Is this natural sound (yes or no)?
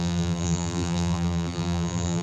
no